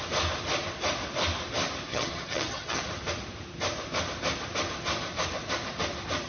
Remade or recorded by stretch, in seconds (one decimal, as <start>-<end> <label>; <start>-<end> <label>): 0.0-1.9 recorded; 1.9-2.8 remade; 2.8-6.3 recorded